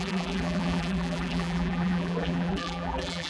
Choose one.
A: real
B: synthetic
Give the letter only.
B